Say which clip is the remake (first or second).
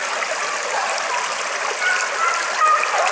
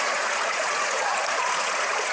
second